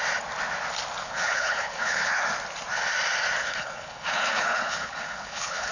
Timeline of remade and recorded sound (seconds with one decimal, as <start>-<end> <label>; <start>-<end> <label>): 0.0-1.0 recorded; 1.0-2.2 remade; 2.2-3.4 recorded; 3.4-5.7 remade

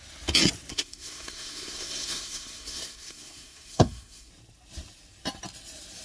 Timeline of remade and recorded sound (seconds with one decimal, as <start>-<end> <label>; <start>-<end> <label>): 0.0-0.7 recorded; 0.7-4.3 remade; 4.3-6.0 recorded